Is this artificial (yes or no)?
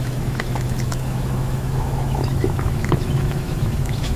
yes